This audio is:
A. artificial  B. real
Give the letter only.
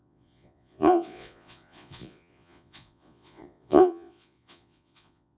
A